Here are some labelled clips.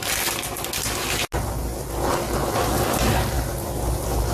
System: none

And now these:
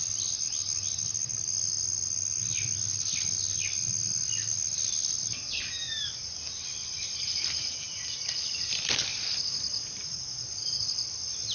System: none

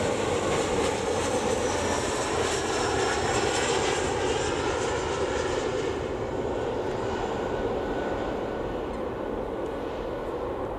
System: none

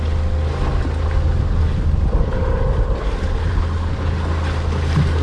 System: none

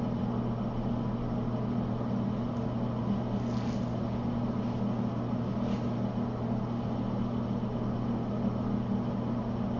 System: none